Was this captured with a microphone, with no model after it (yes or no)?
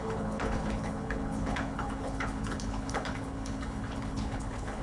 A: no